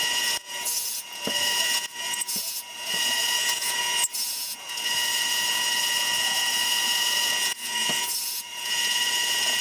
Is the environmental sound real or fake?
fake